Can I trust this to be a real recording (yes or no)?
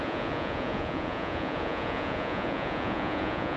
no